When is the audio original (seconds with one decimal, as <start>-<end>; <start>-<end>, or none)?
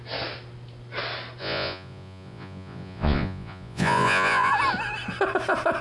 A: 0.0-1.4; 4.5-5.8